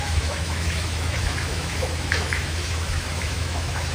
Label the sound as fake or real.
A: fake